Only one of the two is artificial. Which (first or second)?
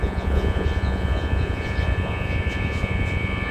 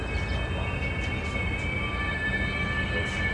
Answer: first